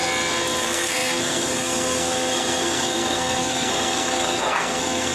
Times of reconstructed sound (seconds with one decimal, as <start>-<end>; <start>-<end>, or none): 0.6-5.1